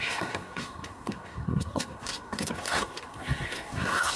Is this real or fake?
fake